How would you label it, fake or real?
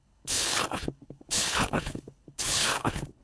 fake